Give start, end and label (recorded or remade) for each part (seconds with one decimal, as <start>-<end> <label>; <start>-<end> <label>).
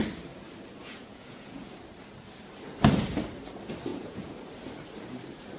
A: 0.0-0.8 recorded; 0.8-1.7 remade; 1.7-3.9 recorded; 3.9-4.4 remade; 4.4-5.6 recorded